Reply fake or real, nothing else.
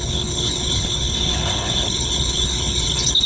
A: fake